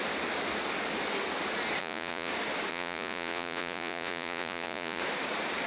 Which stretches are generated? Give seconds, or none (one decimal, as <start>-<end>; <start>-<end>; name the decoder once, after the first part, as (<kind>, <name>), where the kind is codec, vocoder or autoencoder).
1.8-2.3 (vocoder, Vocos); 2.7-5.0